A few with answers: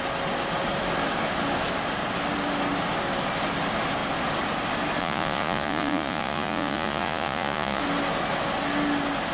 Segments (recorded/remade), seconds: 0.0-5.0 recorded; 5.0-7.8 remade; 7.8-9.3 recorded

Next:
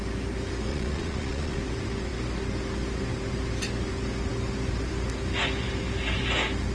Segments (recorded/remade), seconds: 0.0-0.7 recorded; 0.7-1.6 remade; 1.6-6.7 recorded

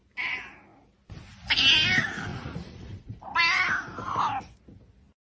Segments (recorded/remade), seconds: 0.0-2.3 recorded; 2.3-3.2 remade; 3.2-5.4 recorded

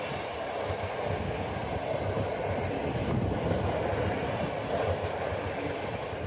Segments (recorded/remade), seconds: 0.0-6.3 recorded

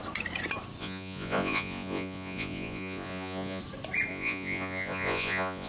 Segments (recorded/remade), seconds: 0.0-0.8 recorded; 0.8-3.6 remade; 3.6-4.1 recorded; 4.1-5.7 remade

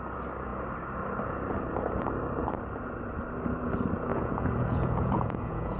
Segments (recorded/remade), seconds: 0.0-4.1 recorded; 4.1-5.8 remade